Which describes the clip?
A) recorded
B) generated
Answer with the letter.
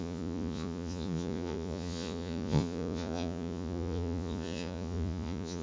B